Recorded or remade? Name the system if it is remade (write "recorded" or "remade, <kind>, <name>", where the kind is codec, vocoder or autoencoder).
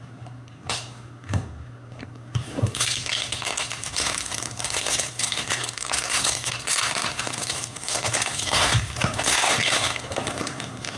remade, codec, SNAC